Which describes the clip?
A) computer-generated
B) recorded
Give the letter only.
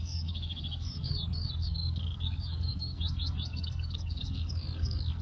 A